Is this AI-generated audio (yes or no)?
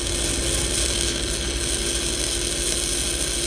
no